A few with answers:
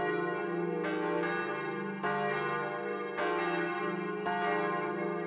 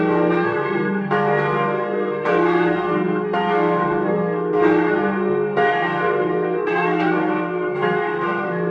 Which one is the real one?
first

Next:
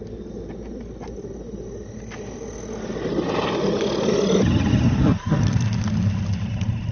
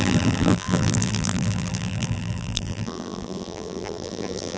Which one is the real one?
first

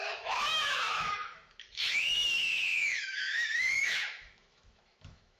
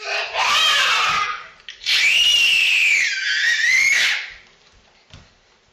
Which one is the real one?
second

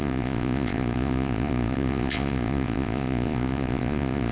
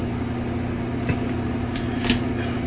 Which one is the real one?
second